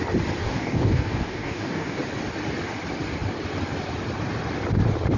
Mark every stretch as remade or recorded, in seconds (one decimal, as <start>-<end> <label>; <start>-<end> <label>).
0.0-0.4 recorded; 0.4-2.0 remade; 2.0-5.2 recorded